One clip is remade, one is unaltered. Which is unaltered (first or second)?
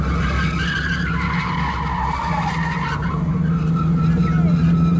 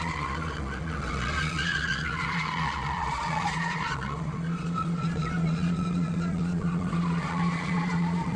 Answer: first